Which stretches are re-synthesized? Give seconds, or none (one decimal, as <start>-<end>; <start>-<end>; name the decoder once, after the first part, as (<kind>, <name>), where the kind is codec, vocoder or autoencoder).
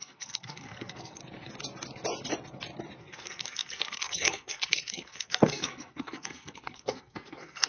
0.0-1.2 (codec, SNAC); 3.0-7.7